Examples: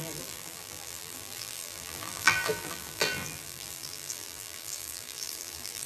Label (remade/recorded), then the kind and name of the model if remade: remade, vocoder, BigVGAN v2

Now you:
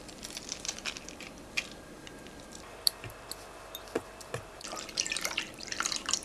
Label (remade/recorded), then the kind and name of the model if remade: remade, vocoder, BigVGAN v2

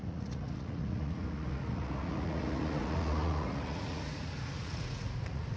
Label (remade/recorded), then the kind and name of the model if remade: remade, vocoder, Vocos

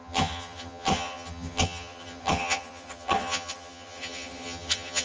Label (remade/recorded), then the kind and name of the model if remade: remade, vocoder, HiFi-GAN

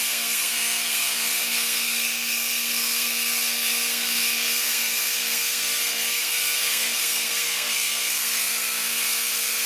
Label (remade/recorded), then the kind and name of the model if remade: remade, codec, SNAC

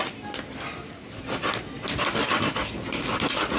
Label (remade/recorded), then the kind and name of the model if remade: recorded